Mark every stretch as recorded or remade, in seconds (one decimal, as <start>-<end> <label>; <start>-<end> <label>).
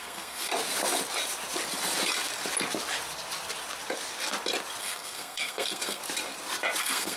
0.0-0.5 remade; 0.5-4.8 recorded; 4.8-6.0 remade; 6.0-6.8 recorded; 6.8-7.2 remade